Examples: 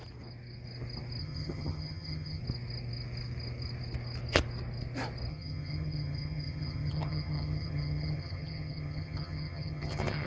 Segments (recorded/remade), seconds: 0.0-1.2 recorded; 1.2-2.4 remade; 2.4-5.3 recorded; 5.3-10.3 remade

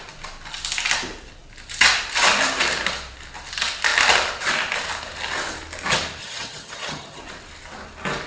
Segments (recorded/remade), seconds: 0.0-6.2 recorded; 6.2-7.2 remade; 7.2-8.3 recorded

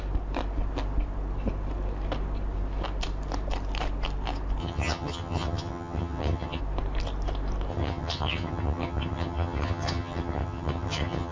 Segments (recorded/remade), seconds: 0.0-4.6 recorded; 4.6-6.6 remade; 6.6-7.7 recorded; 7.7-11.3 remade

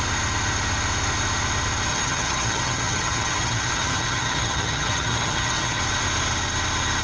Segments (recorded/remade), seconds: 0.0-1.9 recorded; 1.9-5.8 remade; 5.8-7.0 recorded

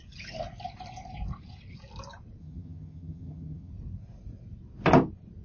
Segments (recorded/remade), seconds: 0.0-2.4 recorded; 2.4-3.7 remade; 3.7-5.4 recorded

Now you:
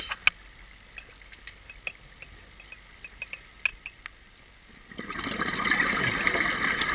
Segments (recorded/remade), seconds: 0.0-6.9 recorded

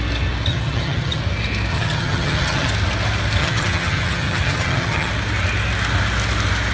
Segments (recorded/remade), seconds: 0.0-0.5 recorded; 0.5-1.2 remade; 1.2-1.7 recorded; 1.7-2.7 remade; 2.7-3.4 recorded; 3.4-5.1 remade; 5.1-6.7 recorded

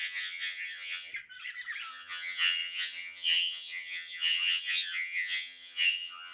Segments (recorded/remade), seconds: 0.0-1.1 remade; 1.1-1.9 recorded; 1.9-6.3 remade